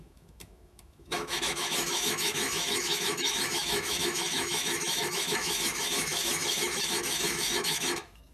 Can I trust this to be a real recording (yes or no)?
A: no